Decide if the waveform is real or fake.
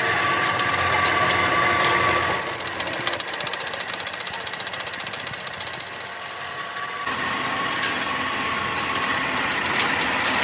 real